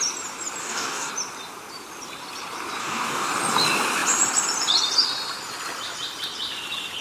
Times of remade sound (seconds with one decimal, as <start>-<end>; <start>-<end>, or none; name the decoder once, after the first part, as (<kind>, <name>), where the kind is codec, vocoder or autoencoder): 0.6-1.1 (codec, DAC); 2.8-3.3